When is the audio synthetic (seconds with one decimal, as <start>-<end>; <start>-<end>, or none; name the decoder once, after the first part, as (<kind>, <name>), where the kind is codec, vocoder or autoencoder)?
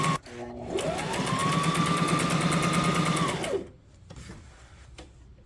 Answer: none